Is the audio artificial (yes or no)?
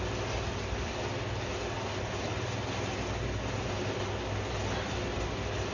no